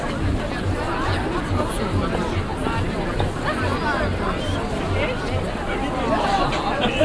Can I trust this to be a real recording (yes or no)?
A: yes